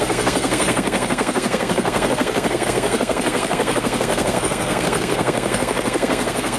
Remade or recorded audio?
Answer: remade